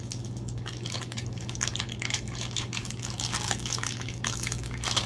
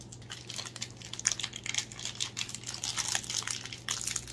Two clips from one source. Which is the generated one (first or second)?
first